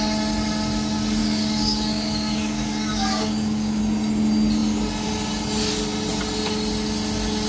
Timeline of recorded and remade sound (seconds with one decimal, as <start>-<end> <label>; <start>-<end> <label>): 0.0-1.2 recorded; 1.2-3.8 remade; 3.8-7.5 recorded